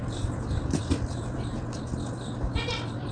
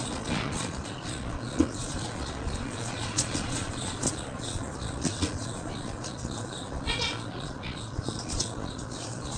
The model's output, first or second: second